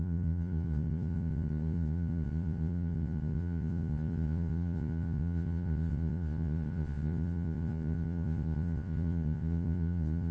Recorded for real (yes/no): no